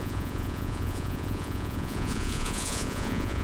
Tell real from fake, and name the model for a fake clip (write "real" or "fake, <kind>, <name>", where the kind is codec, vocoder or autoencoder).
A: fake, vocoder, Vocos